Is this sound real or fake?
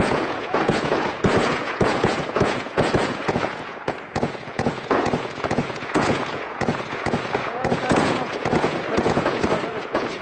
fake